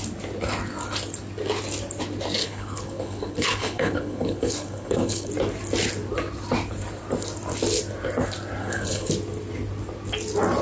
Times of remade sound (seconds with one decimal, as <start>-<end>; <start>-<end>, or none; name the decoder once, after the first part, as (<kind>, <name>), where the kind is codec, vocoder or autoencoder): 2.4-5.3 (codec, HILCodec); 8.6-9.1